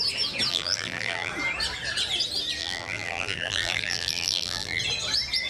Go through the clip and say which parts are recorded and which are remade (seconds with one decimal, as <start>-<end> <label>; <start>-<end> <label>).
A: 0.0-0.5 recorded; 0.5-1.3 remade; 1.3-2.6 recorded; 2.6-4.8 remade; 4.8-5.5 recorded